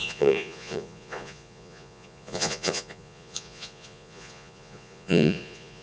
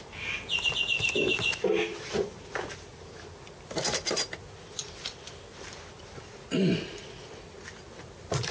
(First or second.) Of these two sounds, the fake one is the first